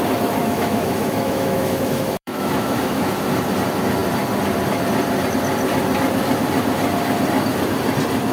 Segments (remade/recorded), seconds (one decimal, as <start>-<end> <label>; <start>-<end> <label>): 0.0-0.4 recorded; 0.4-3.1 remade; 3.1-8.3 recorded